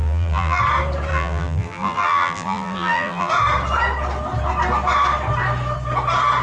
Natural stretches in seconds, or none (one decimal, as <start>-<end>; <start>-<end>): 0.6-1.1; 3.3-6.4